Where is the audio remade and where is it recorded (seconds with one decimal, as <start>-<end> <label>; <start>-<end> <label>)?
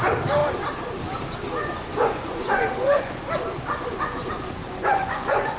0.0-1.6 recorded; 1.6-3.2 remade; 3.2-4.6 recorded; 4.6-5.6 remade